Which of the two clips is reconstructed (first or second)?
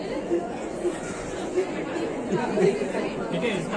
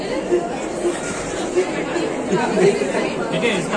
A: first